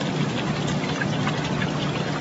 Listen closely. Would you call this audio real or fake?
real